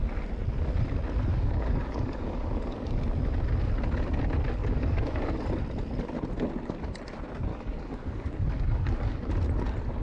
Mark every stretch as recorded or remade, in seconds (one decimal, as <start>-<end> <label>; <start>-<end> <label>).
0.0-1.3 recorded; 1.3-3.0 remade; 3.0-4.6 recorded; 4.6-5.2 remade; 5.2-7.5 recorded; 7.5-9.3 remade; 9.3-10.0 recorded